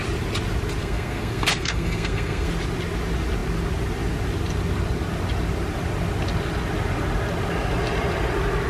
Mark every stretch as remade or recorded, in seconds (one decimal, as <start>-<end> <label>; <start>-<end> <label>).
0.0-0.8 recorded; 0.8-2.5 remade; 2.5-8.7 recorded